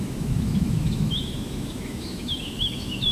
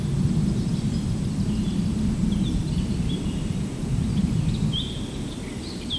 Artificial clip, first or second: first